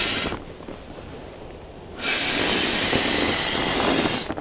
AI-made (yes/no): no